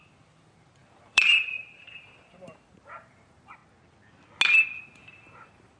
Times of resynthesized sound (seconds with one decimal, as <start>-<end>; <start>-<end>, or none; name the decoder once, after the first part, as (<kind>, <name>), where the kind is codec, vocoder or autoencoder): 0.0-3.6 (vocoder, BigVGAN v2); 4.8-5.8